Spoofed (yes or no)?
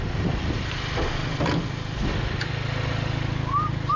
no